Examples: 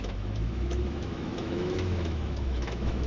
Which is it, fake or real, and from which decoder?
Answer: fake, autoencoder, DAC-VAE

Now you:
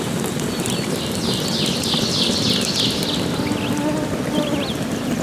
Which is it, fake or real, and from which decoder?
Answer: real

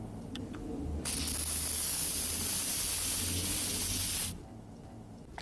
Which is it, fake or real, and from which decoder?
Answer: real